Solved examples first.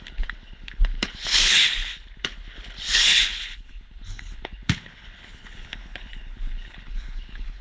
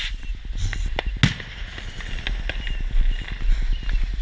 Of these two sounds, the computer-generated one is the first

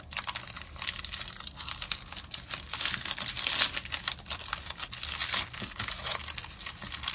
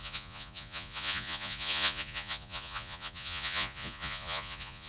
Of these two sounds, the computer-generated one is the second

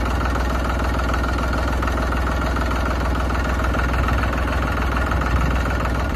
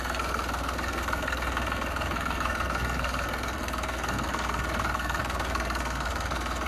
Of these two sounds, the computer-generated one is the second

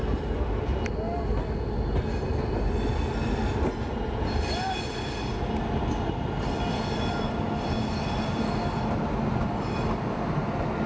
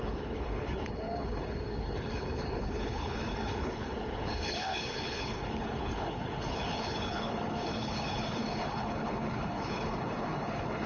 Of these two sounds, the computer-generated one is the second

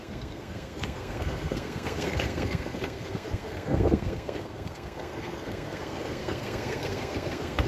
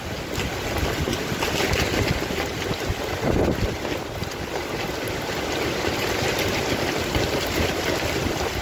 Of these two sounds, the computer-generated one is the first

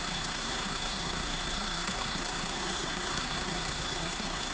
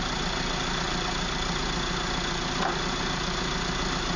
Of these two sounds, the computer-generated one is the first